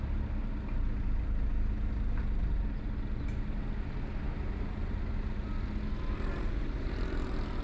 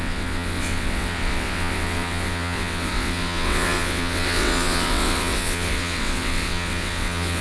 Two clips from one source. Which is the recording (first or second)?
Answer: first